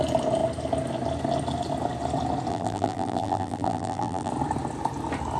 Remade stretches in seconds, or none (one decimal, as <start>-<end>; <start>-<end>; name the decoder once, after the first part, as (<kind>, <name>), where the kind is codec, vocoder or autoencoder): 2.5-4.3 (vocoder, BigVGAN v2)